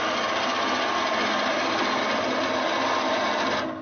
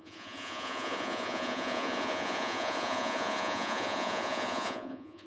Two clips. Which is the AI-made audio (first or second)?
second